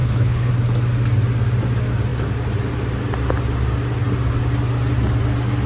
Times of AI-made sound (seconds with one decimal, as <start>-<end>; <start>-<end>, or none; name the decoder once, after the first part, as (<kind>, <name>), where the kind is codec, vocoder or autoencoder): 0.0-0.5 (codec, HILCodec)